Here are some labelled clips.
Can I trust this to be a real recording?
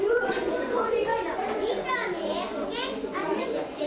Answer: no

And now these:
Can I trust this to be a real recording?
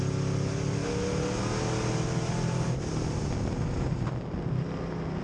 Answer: yes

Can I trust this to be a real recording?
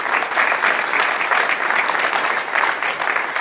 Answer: yes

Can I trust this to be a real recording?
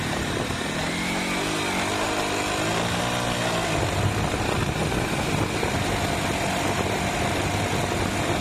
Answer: yes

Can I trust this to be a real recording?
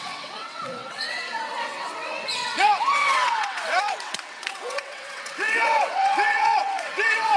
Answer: no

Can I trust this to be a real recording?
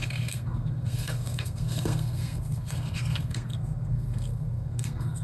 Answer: no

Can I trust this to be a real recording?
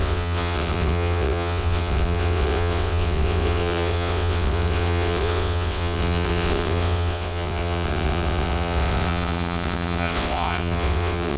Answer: no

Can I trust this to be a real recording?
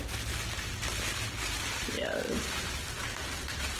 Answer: yes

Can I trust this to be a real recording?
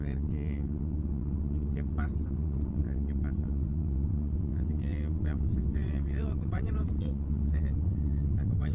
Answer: no